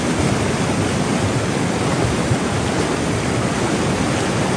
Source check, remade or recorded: recorded